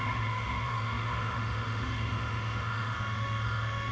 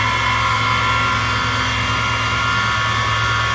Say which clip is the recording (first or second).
second